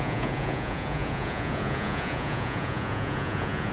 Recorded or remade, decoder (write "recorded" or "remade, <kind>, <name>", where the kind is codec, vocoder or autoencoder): remade, vocoder, Vocos